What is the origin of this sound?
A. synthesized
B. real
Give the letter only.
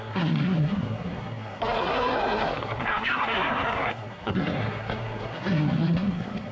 A